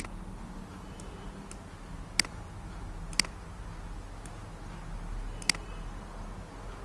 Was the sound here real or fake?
real